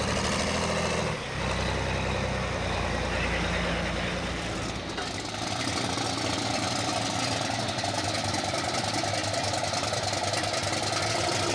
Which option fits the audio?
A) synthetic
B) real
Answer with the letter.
B